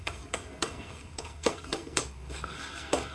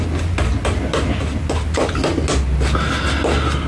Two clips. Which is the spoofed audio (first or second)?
first